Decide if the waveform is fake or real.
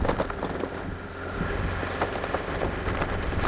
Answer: real